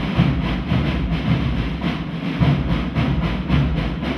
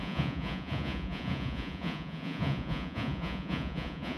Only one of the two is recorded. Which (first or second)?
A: first